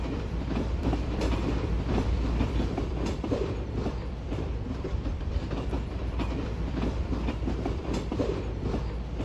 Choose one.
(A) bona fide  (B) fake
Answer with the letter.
B